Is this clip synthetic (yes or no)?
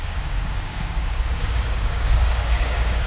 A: yes